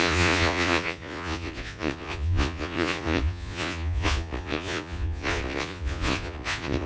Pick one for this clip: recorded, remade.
remade